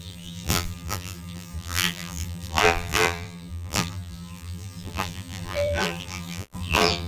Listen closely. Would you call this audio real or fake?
fake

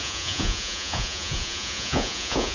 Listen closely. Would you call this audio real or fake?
fake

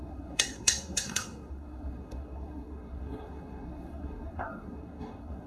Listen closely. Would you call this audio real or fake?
fake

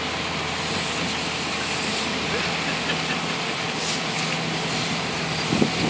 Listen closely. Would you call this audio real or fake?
real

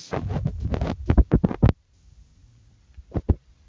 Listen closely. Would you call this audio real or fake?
real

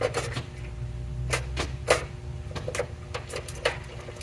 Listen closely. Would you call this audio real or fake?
real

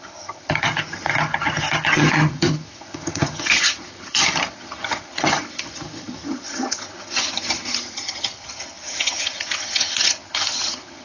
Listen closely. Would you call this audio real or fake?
fake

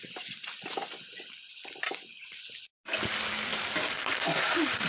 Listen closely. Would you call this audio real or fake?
real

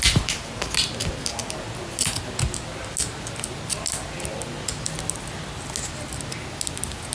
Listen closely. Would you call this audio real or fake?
real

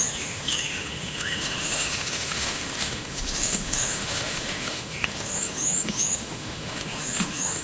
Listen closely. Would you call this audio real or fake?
fake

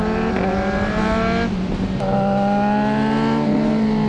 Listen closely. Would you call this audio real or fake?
real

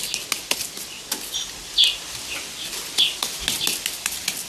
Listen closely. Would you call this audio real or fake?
real